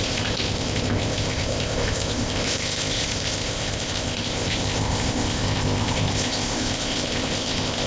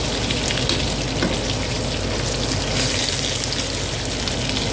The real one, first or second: second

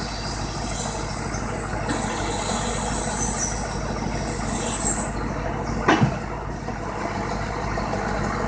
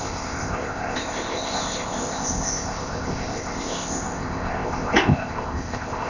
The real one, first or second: first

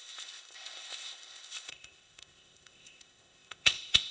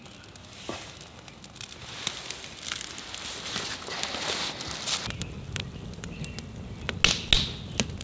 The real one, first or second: second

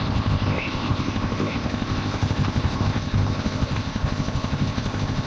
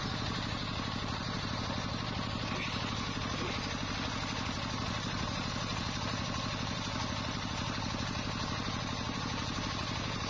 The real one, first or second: second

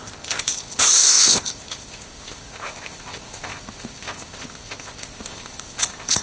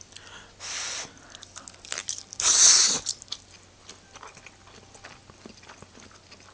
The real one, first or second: second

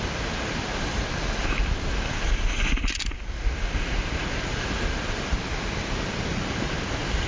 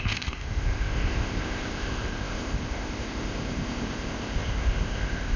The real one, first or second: first